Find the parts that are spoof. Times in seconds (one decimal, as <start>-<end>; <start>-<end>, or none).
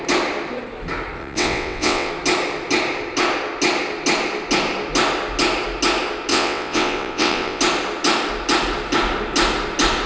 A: 1.2-2.1; 6.3-7.6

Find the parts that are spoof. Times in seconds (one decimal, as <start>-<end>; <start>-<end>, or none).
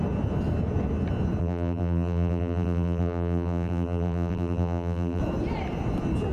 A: 1.4-5.2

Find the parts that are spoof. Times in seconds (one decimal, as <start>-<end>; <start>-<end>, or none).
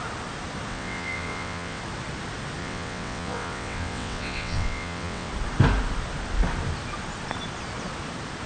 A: 0.7-1.8; 2.6-5.3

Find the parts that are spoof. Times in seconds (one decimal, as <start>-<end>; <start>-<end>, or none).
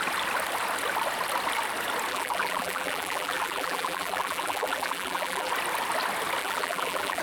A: 2.1-5.5; 6.4-7.2